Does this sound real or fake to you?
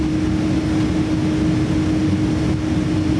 real